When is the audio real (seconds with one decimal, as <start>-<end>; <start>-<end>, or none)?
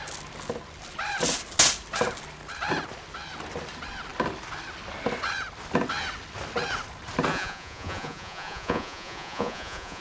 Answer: 0.0-7.3